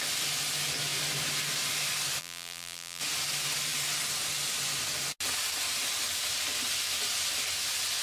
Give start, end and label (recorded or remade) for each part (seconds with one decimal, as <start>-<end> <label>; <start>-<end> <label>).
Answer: 0.0-2.2 recorded; 2.2-3.0 remade; 3.0-8.0 recorded